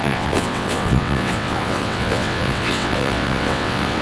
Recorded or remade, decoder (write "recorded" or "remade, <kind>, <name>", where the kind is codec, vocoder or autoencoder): remade, vocoder, WaveNeXt